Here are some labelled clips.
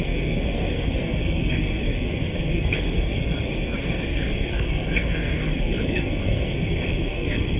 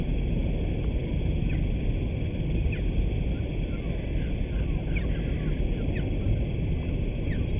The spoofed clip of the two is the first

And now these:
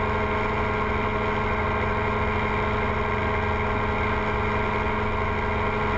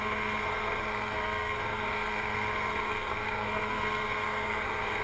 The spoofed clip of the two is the second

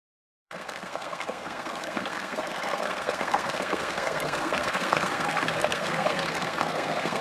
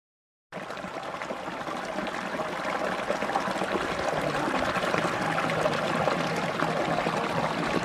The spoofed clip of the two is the first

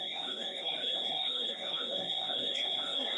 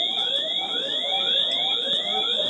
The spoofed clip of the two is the first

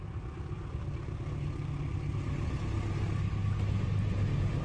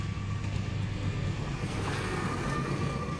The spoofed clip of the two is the second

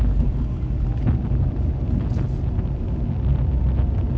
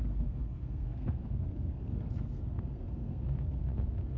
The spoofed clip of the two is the second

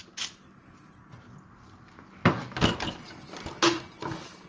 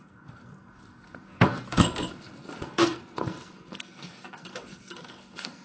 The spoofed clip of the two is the second